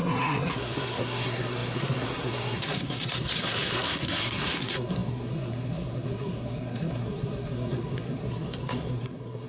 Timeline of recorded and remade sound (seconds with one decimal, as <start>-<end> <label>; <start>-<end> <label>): 0.0-9.5 remade

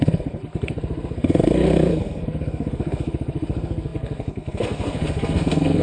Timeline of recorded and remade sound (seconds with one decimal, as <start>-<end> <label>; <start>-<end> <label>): 0.0-5.8 remade

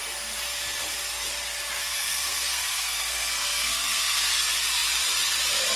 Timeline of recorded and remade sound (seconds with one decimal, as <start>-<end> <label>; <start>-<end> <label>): 0.0-1.8 recorded; 1.8-4.2 remade; 4.2-5.8 recorded

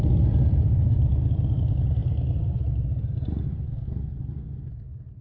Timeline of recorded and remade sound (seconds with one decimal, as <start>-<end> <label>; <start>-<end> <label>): 0.0-3.5 recorded; 3.5-4.7 remade; 4.7-5.2 recorded